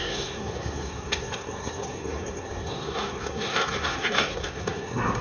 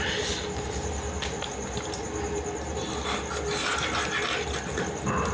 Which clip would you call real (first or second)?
second